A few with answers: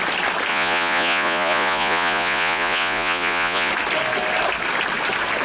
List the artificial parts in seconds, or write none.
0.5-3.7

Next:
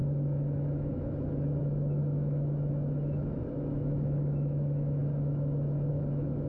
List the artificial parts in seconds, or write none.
0.0-6.5

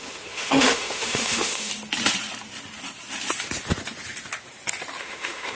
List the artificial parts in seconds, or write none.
0.0-1.7; 5.0-5.5

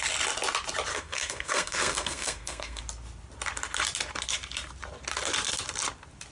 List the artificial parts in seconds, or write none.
0.9-2.8

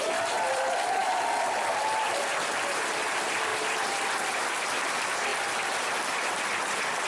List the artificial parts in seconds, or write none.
0.0-7.1

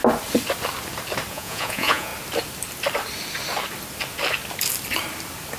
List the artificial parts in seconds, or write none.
1.3-2.1